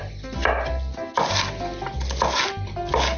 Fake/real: real